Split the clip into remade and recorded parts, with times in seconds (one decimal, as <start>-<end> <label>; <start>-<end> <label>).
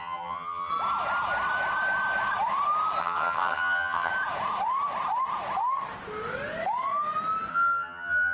0.0-0.7 remade; 0.7-3.0 recorded; 3.0-4.1 remade; 4.1-7.5 recorded; 7.5-8.3 remade